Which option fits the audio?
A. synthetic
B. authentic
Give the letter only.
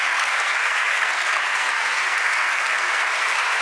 A